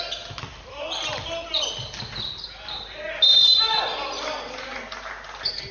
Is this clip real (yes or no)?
yes